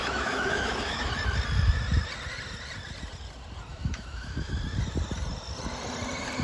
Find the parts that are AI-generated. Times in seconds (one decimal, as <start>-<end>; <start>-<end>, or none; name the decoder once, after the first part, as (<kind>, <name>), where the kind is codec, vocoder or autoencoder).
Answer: 0.0-1.1 (autoencoder, DAC-VAE); 3.7-4.5